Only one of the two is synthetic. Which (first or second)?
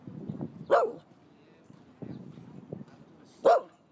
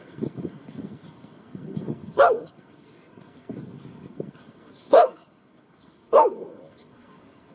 second